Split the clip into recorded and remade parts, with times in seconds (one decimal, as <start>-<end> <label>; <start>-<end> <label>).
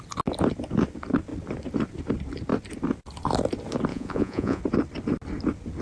0.0-3.9 recorded; 3.9-4.6 remade; 4.6-5.8 recorded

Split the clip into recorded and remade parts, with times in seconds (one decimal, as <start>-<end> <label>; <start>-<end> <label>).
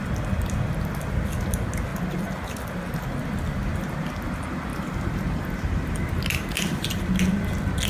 0.0-4.7 recorded; 4.7-6.1 remade; 6.1-7.9 recorded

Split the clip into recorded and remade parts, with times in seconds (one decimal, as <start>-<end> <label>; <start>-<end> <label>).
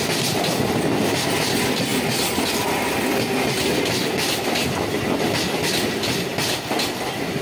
0.0-7.4 recorded